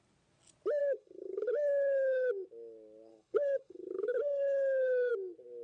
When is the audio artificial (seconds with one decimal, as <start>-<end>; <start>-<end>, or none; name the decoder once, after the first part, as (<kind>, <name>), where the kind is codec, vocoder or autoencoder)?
0.8-2.3 (codec, HILCodec); 3.1-5.1

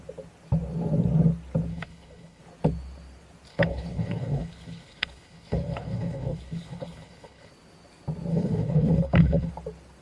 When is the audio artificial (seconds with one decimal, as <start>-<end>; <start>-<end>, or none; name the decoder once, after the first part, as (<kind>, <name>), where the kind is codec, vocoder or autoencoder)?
1.7-2.4 (codec, HILCodec); 3.5-7.5; 8.3-9.5

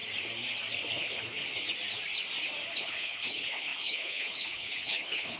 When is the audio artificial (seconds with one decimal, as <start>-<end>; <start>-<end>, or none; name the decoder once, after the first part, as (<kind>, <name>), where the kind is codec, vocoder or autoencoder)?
0.9-1.4 (codec, HILCodec); 2.8-5.4

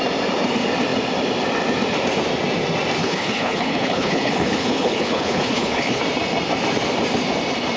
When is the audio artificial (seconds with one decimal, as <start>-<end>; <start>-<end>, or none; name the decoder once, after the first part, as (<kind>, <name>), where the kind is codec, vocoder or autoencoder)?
3.0-6.0 (codec, HILCodec)

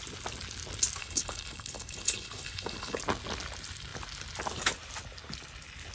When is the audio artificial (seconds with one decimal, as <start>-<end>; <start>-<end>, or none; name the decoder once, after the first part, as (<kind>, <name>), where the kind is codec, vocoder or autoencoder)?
1.0-3.0 (codec, HILCodec)

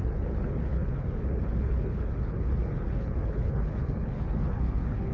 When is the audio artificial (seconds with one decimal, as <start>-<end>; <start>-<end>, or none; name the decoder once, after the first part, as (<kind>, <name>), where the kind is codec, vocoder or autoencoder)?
0.0-5.1 (codec, HILCodec)

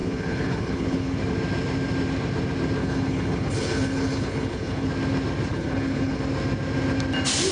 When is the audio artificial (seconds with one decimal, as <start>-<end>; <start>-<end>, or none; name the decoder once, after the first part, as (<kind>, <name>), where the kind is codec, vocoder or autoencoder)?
0.0-1.2 (codec, HILCodec); 2.8-4.9; 5.5-6.2